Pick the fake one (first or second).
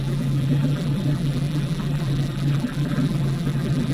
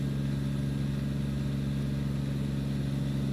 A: first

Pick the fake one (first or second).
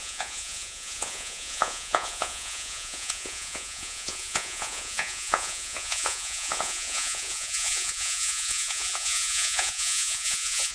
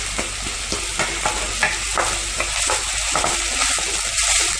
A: first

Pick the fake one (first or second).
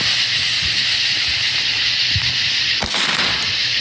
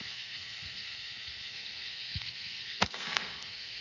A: second